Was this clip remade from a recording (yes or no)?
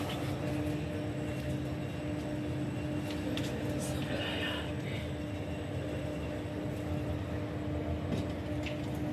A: no